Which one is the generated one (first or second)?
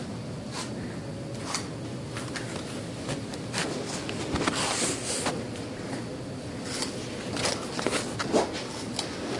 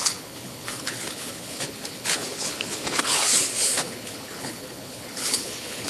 second